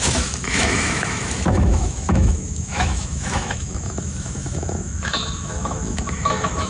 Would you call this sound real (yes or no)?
no